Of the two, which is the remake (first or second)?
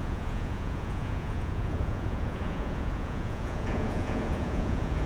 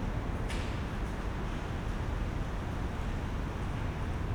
first